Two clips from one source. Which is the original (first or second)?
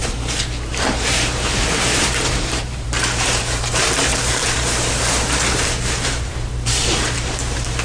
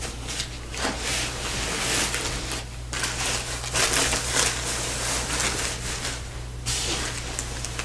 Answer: second